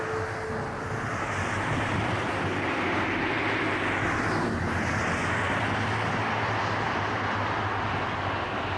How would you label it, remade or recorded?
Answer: recorded